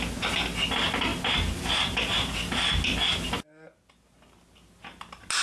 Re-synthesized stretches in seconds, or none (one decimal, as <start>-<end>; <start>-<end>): none